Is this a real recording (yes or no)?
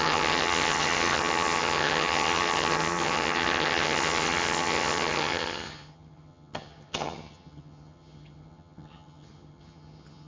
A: no